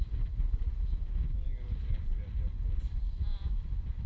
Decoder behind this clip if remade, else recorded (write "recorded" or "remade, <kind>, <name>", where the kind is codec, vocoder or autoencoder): recorded